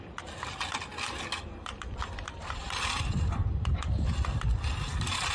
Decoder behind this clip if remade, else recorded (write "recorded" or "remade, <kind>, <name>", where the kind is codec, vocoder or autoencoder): recorded